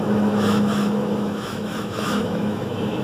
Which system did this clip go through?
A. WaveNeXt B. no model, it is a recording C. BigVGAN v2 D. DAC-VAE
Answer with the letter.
D